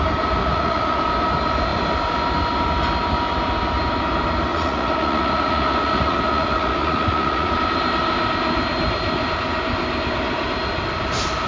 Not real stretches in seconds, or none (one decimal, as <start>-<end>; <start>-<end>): 0.4-1.0; 4.5-7.5